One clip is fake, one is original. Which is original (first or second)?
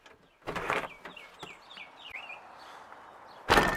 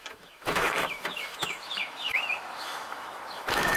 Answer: first